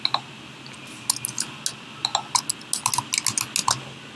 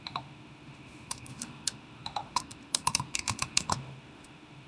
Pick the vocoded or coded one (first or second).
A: second